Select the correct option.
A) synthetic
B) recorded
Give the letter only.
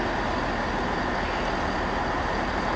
B